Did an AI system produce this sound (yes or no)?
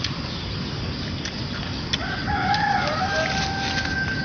no